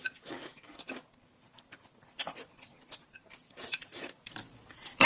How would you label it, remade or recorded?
recorded